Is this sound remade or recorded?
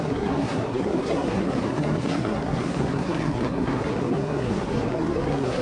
remade